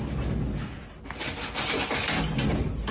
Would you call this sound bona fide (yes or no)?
yes